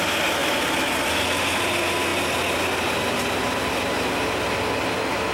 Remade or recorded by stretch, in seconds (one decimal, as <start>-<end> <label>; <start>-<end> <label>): 0.0-0.4 recorded; 0.4-1.2 remade; 1.2-5.3 recorded